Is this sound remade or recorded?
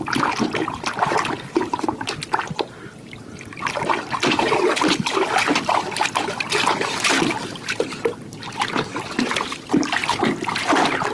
recorded